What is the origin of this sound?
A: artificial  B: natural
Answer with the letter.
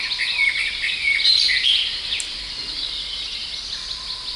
B